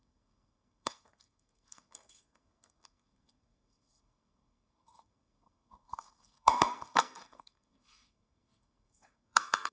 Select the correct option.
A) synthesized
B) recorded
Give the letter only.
A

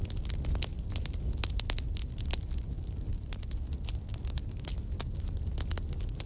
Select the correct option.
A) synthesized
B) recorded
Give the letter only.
B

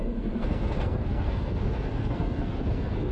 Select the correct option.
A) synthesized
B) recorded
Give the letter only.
A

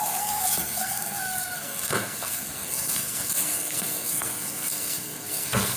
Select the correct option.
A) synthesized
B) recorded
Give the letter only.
A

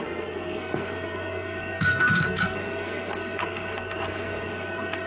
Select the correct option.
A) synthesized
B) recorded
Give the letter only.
A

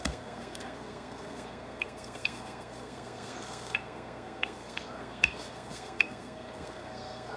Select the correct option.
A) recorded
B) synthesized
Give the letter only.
B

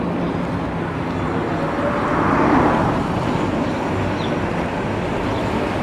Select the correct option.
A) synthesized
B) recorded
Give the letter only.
B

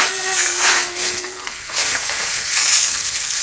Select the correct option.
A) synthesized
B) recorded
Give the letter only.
A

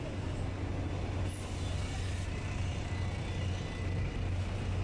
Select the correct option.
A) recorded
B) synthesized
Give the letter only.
A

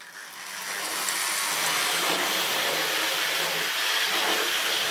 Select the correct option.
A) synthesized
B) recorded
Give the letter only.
B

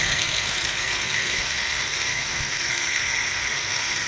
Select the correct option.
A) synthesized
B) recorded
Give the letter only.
A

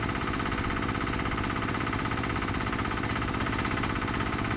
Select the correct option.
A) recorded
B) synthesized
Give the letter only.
A